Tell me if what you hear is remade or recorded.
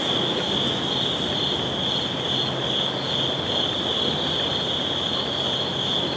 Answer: recorded